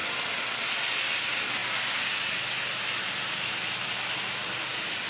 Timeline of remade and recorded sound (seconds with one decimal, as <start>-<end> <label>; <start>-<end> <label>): 0.0-5.1 recorded